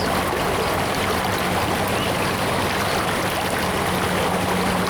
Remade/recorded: recorded